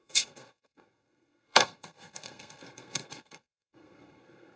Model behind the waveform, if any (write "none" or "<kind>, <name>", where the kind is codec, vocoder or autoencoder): codec, SNAC